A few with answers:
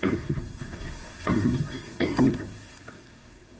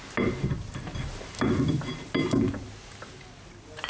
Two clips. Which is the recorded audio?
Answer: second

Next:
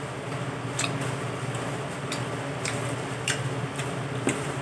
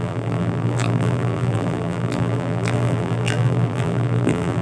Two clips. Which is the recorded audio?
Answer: first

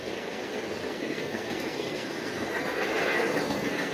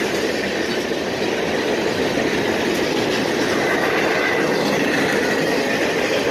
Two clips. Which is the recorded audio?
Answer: second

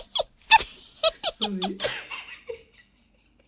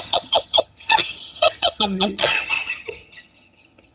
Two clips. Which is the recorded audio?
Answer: first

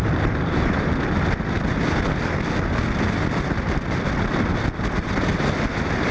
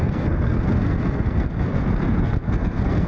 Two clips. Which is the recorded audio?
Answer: first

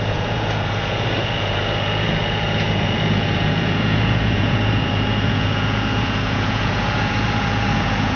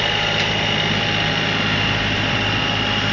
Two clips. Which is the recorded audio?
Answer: second